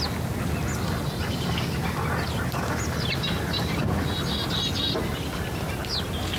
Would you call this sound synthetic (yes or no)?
no